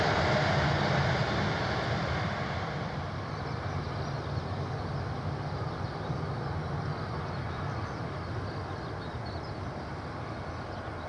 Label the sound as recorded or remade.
recorded